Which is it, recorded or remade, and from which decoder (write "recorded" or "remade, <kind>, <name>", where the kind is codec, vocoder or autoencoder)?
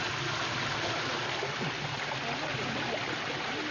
recorded